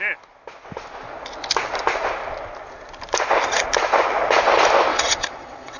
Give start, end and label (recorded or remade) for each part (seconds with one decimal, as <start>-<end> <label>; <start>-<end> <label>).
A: 0.0-4.9 recorded; 4.9-5.8 remade